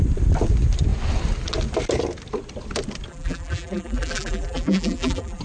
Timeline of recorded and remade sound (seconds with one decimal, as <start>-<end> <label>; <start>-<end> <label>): 0.0-3.1 recorded; 3.1-5.4 remade